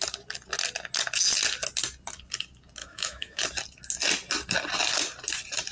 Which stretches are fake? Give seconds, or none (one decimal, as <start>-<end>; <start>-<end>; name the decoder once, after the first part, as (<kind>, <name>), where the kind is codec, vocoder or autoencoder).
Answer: 2.8-3.4 (autoencoder, DAC-VAE)

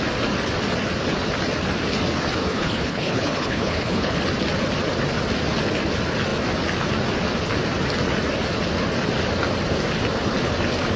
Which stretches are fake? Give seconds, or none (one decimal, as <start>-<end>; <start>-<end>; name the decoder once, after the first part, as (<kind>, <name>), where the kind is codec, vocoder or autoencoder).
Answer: 2.4-4.2 (codec, HILCodec)